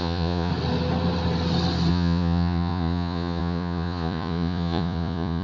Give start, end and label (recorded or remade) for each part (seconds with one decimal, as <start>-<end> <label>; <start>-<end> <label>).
0.0-0.5 remade; 0.5-1.9 recorded; 1.9-5.4 remade